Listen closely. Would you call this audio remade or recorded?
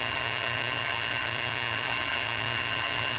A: remade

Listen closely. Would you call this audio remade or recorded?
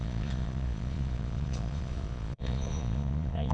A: remade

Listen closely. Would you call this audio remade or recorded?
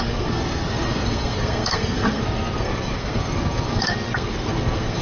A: remade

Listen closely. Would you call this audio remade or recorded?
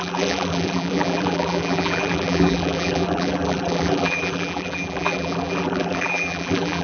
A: remade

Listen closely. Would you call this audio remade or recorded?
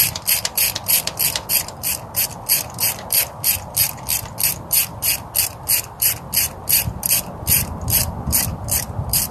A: remade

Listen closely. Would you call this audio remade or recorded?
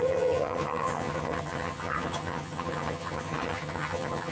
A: remade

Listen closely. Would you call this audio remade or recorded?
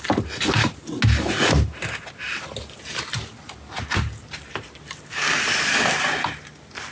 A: recorded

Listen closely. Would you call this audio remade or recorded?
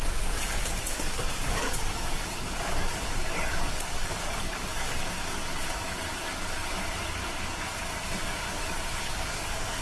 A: remade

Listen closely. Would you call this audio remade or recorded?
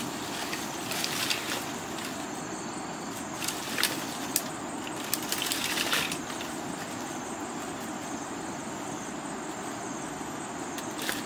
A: recorded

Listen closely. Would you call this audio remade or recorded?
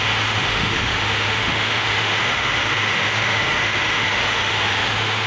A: remade